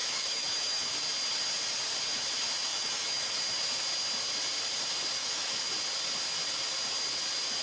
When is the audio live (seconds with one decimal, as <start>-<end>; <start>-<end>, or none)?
0.9-2.7; 3.4-5.2; 5.7-7.6